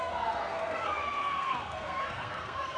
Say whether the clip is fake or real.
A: fake